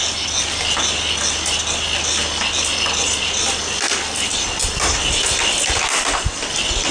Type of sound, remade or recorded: recorded